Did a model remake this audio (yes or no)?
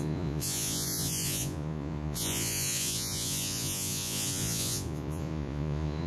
yes